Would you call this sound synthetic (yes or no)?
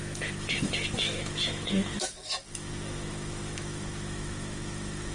yes